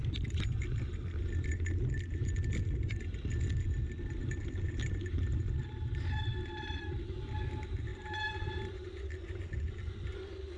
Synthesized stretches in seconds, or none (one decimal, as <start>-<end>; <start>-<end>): 4.2-5.7; 7.9-9.7